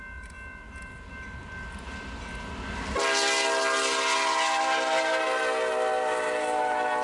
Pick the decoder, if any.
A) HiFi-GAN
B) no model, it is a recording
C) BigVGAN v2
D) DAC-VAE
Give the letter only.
B